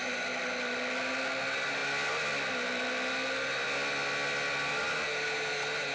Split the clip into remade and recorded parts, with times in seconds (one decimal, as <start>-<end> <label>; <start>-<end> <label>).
0.0-5.9 recorded